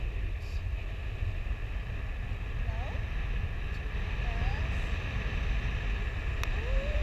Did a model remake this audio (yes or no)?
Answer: no